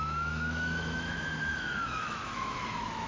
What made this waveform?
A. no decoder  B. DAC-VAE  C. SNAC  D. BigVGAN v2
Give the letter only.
B